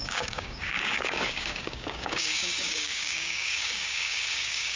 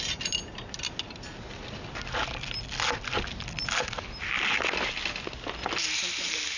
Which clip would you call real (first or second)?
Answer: second